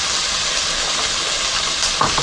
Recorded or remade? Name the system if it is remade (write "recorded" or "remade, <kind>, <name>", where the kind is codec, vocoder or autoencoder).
recorded